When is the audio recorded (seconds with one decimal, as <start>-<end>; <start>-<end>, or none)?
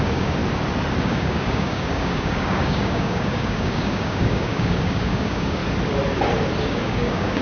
0.4-1.0; 5.6-6.6